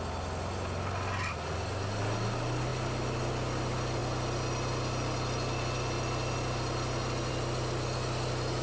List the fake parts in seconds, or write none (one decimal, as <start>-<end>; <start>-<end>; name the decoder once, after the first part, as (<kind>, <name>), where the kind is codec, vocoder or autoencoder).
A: none